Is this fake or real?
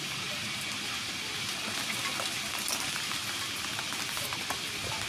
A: real